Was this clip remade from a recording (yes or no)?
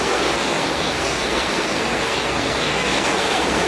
yes